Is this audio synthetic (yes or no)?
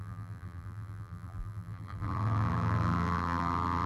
yes